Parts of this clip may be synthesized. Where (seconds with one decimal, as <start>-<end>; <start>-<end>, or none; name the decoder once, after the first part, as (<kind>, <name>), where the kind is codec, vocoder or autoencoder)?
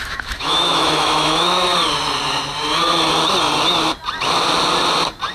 0.0-1.7 (autoencoder, DAC-VAE)